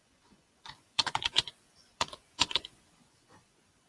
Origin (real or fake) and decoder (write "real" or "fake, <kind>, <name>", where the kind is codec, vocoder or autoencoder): fake, vocoder, Vocos